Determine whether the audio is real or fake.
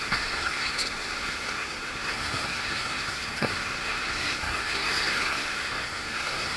fake